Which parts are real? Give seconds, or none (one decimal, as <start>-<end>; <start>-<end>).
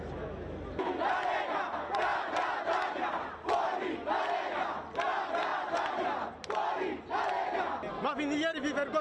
0.0-9.0